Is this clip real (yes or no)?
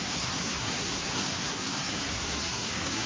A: no